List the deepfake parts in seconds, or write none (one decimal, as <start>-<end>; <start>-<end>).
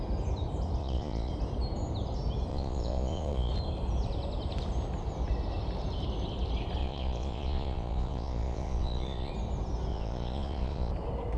0.8-1.3; 2.5-3.5; 6.8-9.3; 9.9-10.9